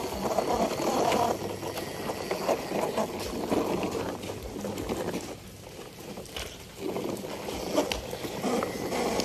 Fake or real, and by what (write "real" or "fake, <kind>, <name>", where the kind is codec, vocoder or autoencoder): real